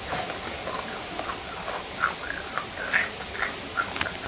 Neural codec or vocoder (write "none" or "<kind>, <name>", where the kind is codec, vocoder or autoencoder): none